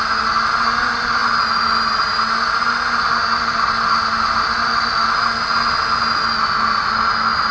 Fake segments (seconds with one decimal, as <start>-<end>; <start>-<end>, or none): none